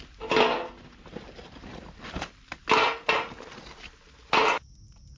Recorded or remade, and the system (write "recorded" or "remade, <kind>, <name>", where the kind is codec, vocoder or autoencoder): recorded